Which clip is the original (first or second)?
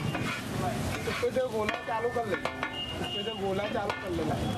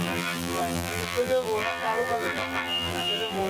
first